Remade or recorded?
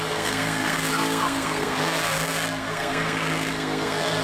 remade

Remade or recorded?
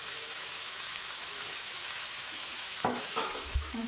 remade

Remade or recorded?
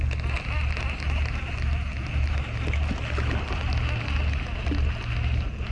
recorded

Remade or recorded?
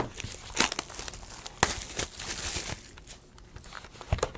recorded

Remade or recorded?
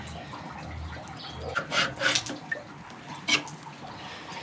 recorded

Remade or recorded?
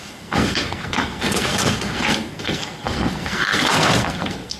remade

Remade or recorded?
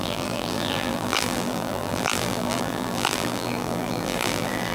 remade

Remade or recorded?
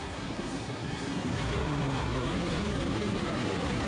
remade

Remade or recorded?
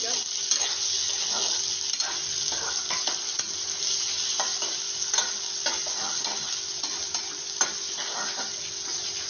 recorded